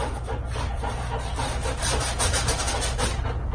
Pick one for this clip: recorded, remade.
recorded